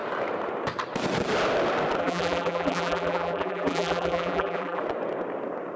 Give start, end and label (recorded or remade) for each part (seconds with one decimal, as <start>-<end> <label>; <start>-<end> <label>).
0.0-2.0 recorded; 2.0-4.8 remade; 4.8-5.8 recorded